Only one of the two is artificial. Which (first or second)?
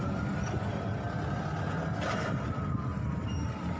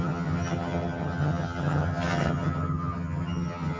second